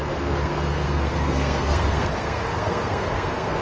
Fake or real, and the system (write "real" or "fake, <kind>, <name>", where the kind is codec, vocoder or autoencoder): fake, codec, SNAC